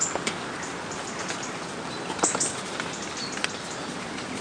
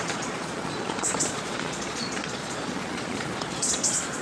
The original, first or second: first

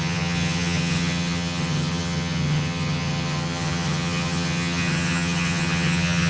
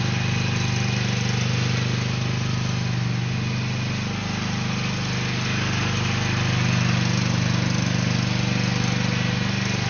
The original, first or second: second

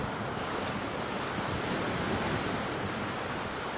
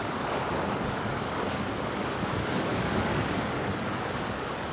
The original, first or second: first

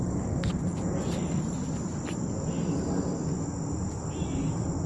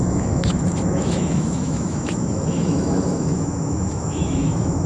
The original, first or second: first